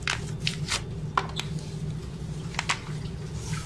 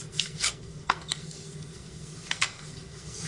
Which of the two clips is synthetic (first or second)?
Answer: second